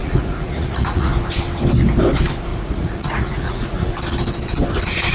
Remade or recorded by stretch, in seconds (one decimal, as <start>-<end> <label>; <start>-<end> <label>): 0.0-1.1 remade; 1.1-2.5 recorded; 2.5-3.9 remade; 3.9-5.1 recorded